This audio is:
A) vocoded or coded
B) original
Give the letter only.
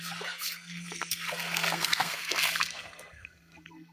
A